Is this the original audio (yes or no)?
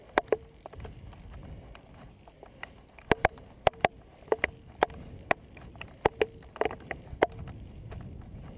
yes